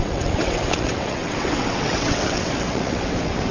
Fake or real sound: fake